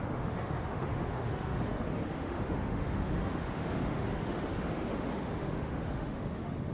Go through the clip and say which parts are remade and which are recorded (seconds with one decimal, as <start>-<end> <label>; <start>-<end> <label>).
0.0-6.7 remade